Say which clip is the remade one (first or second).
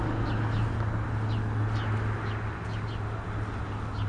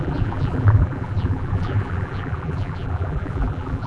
second